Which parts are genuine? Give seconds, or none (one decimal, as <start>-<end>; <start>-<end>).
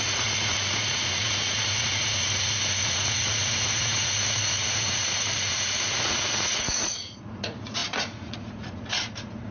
none